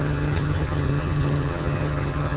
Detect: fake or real fake